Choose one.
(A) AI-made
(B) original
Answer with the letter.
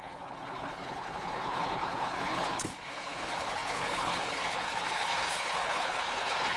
A